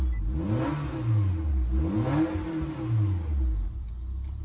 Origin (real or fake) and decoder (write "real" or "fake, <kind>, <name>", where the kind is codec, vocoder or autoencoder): real